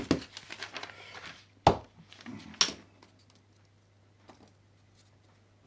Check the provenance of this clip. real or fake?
real